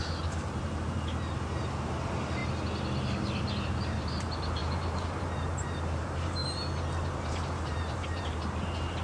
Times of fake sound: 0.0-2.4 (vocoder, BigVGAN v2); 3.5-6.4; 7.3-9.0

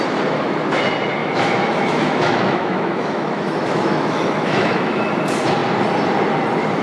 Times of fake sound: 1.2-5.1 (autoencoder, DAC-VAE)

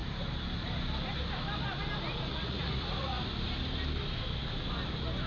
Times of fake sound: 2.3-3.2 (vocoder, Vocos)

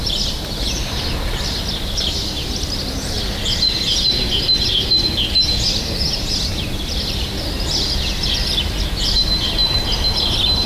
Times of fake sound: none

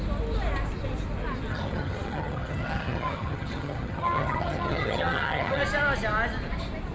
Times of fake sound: 1.5-5.6 (vocoder, HiFi-GAN)

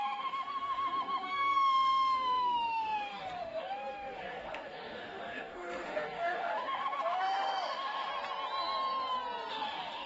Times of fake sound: 0.0-8.1 (autoencoder, DAC-VAE); 9.5-10.1